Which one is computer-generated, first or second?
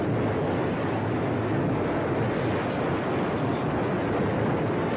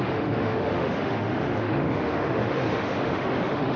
second